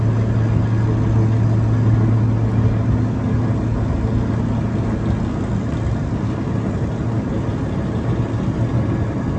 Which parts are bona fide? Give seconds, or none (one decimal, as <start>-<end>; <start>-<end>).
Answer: 0.0-9.4